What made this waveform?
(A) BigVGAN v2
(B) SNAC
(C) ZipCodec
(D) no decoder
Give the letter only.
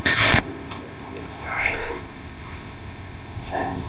C